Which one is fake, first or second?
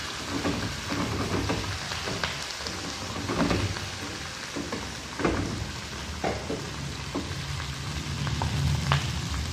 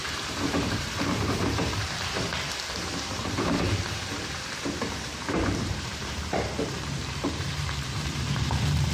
second